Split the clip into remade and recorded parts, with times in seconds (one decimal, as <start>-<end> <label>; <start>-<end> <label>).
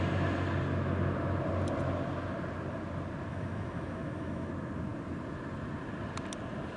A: 0.0-3.3 recorded; 3.3-4.5 remade; 4.5-6.8 recorded